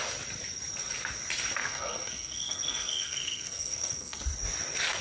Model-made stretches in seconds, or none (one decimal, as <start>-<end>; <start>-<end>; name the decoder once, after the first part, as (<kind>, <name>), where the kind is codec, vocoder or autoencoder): 1.6-4.2 (codec, SNAC)

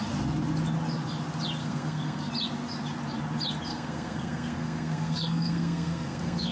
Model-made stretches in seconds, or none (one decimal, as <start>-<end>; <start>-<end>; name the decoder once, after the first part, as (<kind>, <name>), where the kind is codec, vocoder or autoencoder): 1.6-2.3 (codec, SNAC); 3.7-6.5

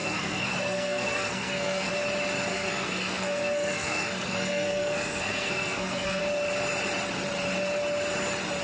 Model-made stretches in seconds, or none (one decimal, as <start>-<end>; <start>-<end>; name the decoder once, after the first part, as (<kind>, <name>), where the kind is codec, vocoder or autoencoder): 0.0-1.9 (codec, SNAC); 2.5-6.2